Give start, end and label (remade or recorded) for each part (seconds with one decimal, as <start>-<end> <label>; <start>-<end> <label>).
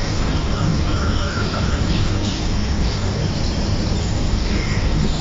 0.0-3.2 remade; 3.2-4.0 recorded; 4.0-5.2 remade